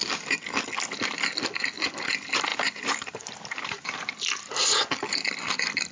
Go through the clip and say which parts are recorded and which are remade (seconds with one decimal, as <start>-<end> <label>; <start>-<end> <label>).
0.0-2.5 recorded; 2.5-4.8 remade; 4.8-5.9 recorded